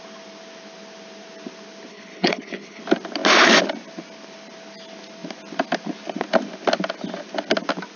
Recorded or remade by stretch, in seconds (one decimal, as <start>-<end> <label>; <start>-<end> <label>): 0.0-1.9 recorded; 1.9-2.8 remade; 2.8-8.0 recorded